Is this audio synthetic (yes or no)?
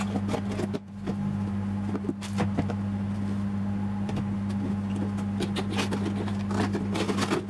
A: no